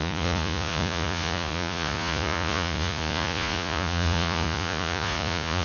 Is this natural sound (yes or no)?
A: no